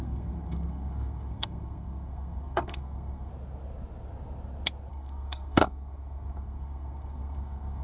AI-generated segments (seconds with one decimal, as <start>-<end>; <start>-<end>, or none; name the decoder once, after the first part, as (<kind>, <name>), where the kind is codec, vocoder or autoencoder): 0.0-3.3 (codec, SNAC); 4.9-7.8